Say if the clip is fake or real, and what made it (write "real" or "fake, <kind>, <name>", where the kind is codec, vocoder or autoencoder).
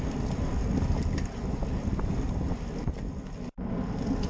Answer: real